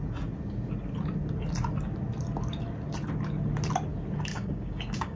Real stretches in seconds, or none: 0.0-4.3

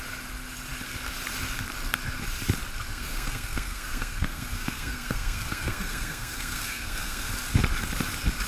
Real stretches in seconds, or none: 0.0-2.9; 7.3-8.5

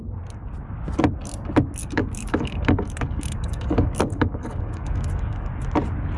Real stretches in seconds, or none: 0.0-1.8; 5.5-6.2